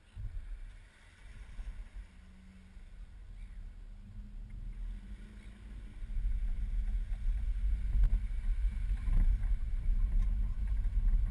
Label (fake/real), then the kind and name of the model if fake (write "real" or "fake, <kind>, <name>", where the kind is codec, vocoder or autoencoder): real